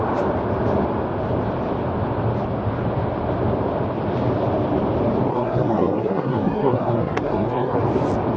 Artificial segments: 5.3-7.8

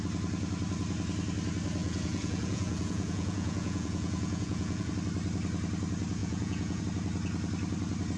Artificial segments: 1.8-4.9; 6.2-6.8

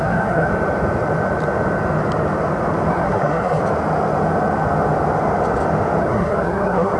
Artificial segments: 0.0-0.5; 2.9-3.6; 6.0-7.0

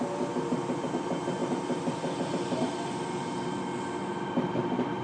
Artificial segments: none

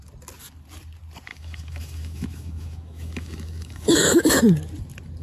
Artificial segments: 1.3-4.4

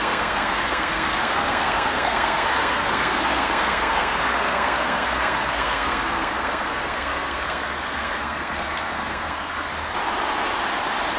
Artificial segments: 0.0-9.7

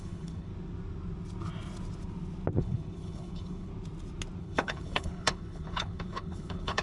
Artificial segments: 0.0-0.5; 2.6-3.7; 4.4-6.8